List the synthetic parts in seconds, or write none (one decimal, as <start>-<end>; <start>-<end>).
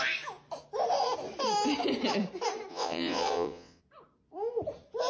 2.7-3.8